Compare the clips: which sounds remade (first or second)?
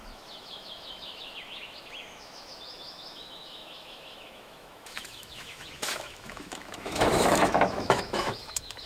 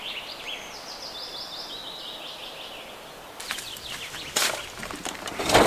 first